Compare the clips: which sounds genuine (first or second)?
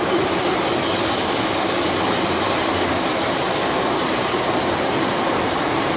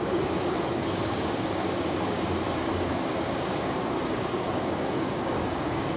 first